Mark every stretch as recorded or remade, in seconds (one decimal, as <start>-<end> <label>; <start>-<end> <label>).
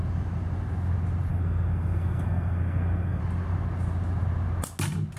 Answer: 0.0-1.3 recorded; 1.3-3.2 remade; 3.2-5.2 recorded